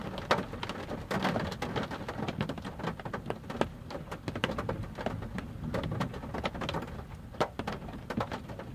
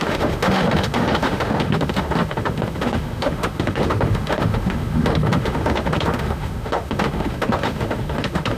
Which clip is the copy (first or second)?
second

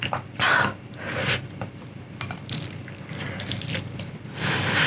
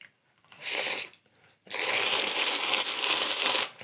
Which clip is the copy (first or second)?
second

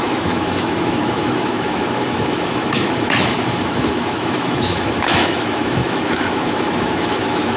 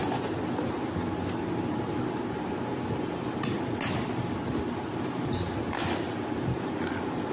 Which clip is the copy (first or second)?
first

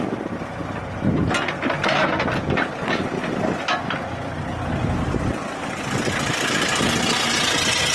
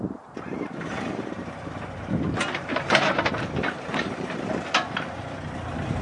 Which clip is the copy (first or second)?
second